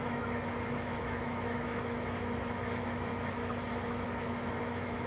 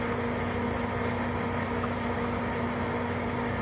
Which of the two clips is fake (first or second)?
first